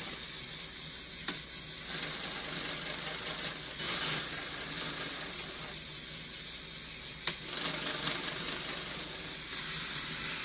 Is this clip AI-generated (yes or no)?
no